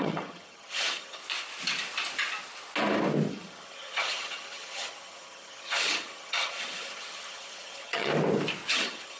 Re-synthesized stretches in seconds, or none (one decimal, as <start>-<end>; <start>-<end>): 0.0-1.2; 3.3-8.1; 8.7-9.2